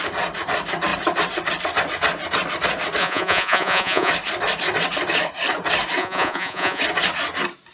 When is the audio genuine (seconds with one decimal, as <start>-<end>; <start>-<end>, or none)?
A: 0.0-3.0; 4.1-6.0; 6.8-7.7